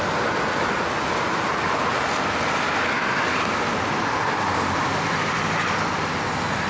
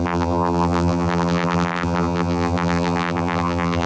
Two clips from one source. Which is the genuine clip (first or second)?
first